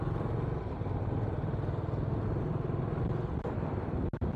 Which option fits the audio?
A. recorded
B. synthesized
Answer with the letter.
A